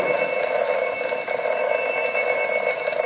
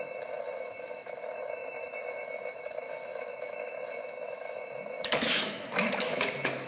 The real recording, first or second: first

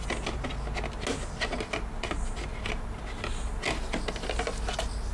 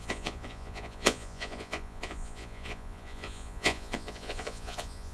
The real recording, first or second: first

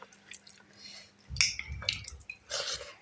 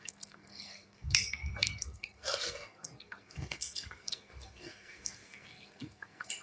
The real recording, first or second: first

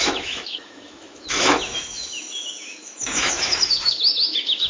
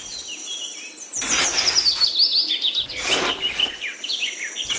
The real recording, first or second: second